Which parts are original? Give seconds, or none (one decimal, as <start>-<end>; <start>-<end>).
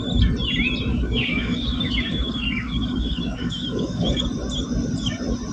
0.0-0.9; 4.2-5.5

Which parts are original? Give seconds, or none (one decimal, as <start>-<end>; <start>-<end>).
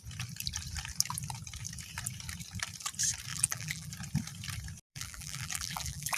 0.0-3.3; 3.9-4.9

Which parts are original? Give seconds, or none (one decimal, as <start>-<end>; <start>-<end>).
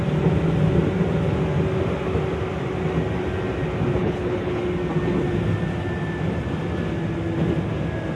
0.0-4.0; 4.6-8.2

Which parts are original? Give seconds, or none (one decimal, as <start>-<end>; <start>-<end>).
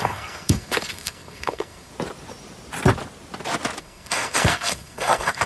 1.9-3.8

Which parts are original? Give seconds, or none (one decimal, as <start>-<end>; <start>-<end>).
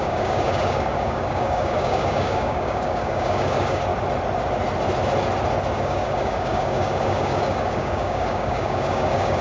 3.9-5.8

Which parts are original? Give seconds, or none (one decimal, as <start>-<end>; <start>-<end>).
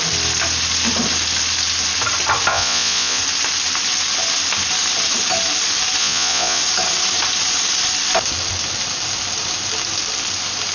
0.0-2.5; 3.2-6.0; 6.6-10.7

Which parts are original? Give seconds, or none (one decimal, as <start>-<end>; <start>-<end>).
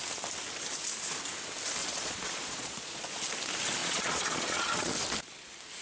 0.0-1.8; 3.2-3.8; 4.9-5.8